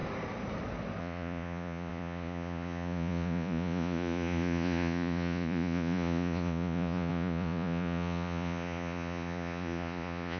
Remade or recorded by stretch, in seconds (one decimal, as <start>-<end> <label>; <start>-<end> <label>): 0.0-1.0 recorded; 1.0-10.4 remade